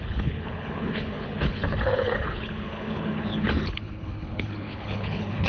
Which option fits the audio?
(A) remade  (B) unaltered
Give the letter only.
A